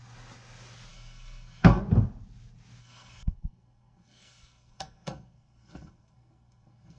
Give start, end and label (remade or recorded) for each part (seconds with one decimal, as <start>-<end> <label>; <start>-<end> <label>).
0.0-0.9 recorded; 0.9-1.8 remade; 1.8-2.8 recorded; 2.8-7.0 remade